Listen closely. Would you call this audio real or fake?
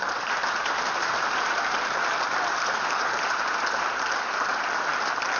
fake